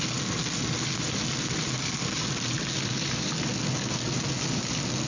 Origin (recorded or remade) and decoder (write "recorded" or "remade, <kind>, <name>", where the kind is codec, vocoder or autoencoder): recorded